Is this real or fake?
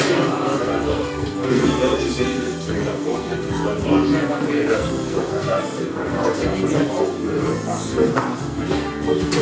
fake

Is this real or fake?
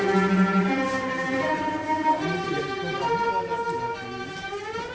real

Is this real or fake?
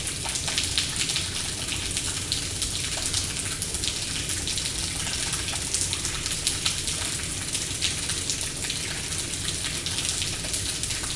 real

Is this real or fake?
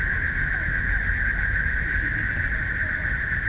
real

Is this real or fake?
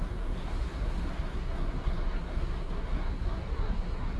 fake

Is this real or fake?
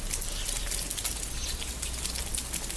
real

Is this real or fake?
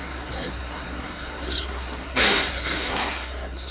fake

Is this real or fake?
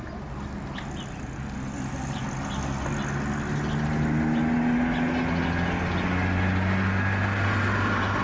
real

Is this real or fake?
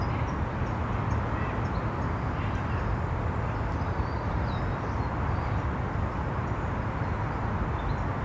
real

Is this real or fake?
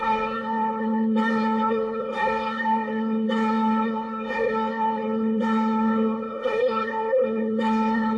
fake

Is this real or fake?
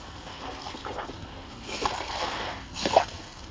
fake